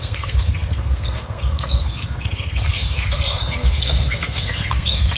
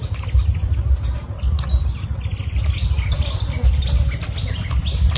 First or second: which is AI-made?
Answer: first